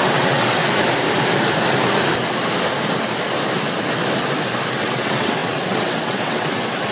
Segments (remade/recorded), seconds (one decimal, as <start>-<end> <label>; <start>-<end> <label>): 0.0-0.6 remade; 0.6-4.7 recorded; 4.7-6.9 remade